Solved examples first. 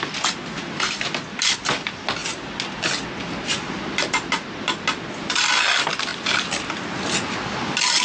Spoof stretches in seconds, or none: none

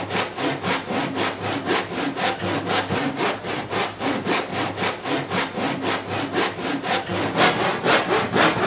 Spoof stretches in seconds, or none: none

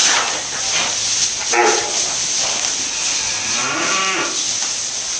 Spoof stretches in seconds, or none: none